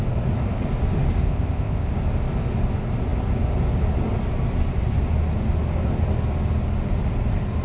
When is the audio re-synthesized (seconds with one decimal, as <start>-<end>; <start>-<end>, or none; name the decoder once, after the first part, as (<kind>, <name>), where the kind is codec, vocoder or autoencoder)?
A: 1.2-1.9 (codec, ZipCodec)